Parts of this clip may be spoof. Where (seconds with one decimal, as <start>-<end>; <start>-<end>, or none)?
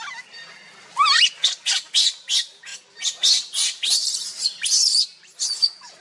none